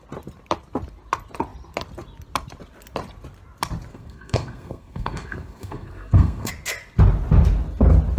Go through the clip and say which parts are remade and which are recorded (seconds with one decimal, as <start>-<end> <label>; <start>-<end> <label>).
0.0-3.9 recorded; 3.9-6.5 remade; 6.5-8.2 recorded